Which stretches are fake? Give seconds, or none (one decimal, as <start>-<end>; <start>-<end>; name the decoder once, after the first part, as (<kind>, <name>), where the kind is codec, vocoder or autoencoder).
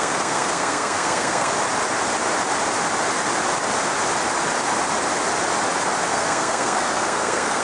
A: 0.0-1.5 (codec, SNAC); 6.1-7.6